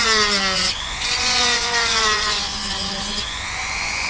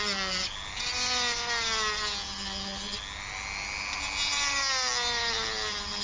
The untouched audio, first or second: second